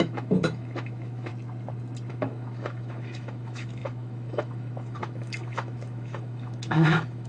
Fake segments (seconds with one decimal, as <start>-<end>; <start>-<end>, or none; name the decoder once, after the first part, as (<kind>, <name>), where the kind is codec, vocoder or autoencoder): 0.0-1.3 (autoencoder, DAC-VAE); 2.1-7.3